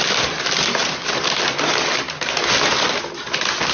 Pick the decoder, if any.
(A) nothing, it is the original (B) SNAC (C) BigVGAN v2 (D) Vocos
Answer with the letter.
C